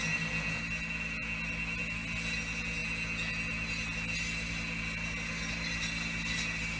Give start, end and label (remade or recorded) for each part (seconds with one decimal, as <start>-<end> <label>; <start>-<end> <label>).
0.0-6.8 recorded